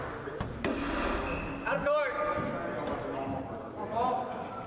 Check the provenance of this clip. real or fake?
real